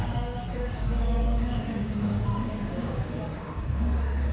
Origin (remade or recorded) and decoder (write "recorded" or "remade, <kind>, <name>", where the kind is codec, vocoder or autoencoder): remade, codec, DAC